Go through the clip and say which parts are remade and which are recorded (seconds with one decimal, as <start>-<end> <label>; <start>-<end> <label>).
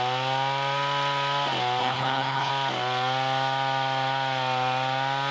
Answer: 0.0-1.8 recorded; 1.8-2.5 remade; 2.5-5.3 recorded